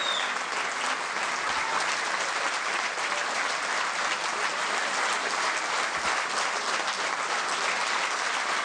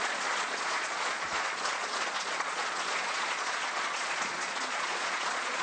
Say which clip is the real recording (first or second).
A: first